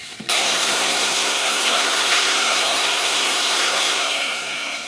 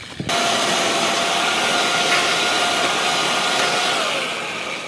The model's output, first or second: first